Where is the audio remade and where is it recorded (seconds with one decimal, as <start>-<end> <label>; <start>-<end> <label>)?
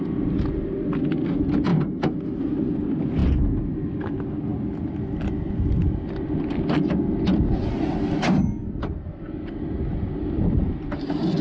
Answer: 0.0-11.4 recorded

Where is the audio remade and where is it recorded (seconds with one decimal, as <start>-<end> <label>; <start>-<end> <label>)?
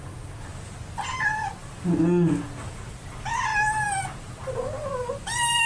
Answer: 0.0-5.7 recorded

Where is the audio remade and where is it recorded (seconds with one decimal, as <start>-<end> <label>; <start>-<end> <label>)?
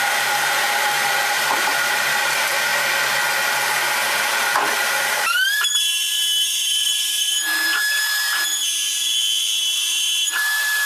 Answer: 0.0-2.7 remade; 2.7-3.5 recorded; 3.5-8.6 remade; 8.6-9.6 recorded; 9.6-10.9 remade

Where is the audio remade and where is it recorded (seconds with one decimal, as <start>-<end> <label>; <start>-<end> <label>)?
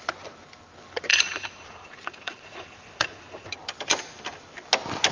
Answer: 0.0-1.1 recorded; 1.1-3.5 remade; 3.5-5.1 recorded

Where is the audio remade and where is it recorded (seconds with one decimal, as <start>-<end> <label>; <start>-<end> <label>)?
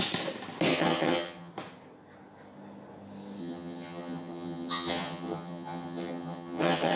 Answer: 0.0-0.7 recorded; 0.7-1.5 remade; 1.5-3.4 recorded; 3.4-7.0 remade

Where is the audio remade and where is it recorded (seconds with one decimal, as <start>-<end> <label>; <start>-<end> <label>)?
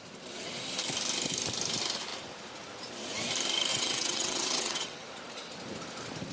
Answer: 0.0-3.7 recorded; 3.7-5.1 remade; 5.1-6.3 recorded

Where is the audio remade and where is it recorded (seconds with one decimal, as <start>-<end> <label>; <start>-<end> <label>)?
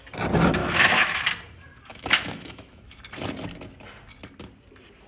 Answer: 0.0-0.6 recorded; 0.6-1.2 remade; 1.2-1.9 recorded; 1.9-2.8 remade; 2.8-5.1 recorded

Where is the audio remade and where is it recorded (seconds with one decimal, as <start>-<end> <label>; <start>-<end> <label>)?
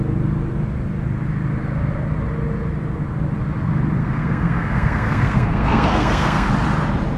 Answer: 0.0-4.0 recorded; 4.0-6.5 remade; 6.5-7.2 recorded